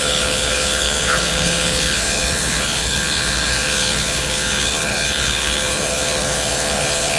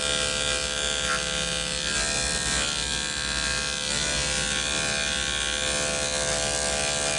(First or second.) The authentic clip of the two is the second